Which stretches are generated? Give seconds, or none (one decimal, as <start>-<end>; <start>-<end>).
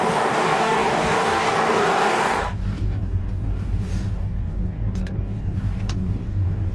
0.0-6.7